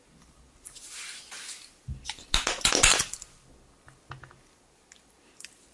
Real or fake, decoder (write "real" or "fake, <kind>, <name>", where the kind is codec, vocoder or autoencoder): real